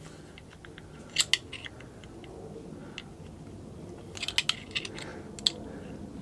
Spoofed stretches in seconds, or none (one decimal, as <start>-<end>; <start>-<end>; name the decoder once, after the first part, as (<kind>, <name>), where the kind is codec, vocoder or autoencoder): none